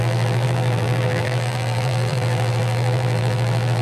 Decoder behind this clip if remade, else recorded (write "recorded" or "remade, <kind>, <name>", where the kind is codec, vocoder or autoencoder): remade, vocoder, BigVGAN v2